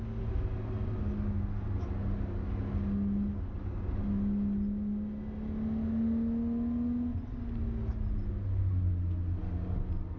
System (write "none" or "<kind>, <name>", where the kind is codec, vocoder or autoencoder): none